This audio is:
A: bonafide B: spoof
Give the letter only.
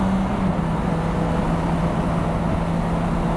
A